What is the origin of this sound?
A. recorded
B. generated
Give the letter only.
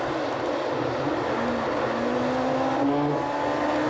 A